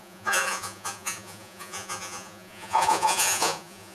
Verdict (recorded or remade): remade